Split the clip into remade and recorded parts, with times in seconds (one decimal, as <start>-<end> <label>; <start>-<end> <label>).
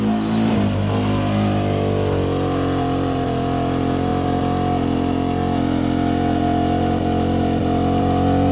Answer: 0.0-8.5 recorded